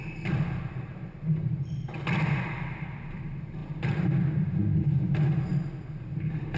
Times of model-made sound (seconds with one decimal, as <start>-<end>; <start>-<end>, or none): 3.6-4.3